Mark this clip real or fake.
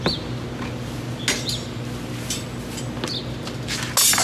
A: real